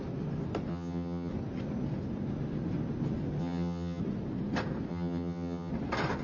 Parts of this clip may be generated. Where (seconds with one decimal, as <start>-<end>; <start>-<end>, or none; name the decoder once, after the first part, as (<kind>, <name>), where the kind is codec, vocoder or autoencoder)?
0.7-1.3 (vocoder, HiFi-GAN); 3.4-4.0; 4.9-5.7